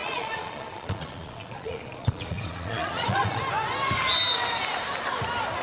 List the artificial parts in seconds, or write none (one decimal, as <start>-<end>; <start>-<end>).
0.0-3.4